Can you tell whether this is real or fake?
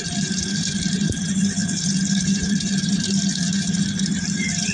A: fake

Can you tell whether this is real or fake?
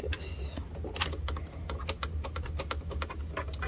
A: real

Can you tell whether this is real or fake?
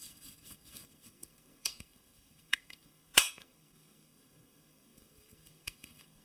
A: fake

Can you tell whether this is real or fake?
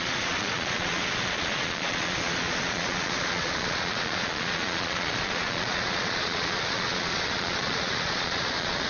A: fake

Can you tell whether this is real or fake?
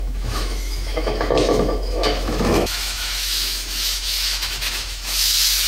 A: fake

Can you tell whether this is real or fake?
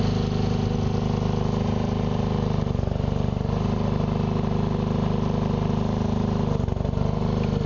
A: real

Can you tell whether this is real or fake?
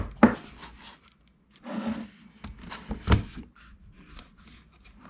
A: real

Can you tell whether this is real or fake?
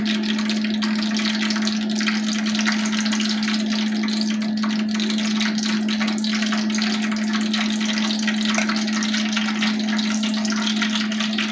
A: real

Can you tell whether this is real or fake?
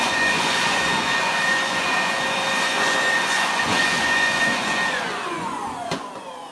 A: fake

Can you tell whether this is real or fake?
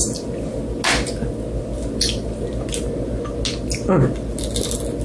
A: real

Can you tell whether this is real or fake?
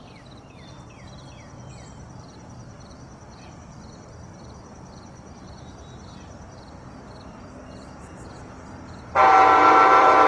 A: fake